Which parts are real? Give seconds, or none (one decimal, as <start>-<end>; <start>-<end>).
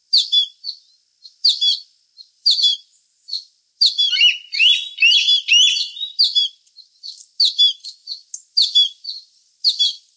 0.0-10.2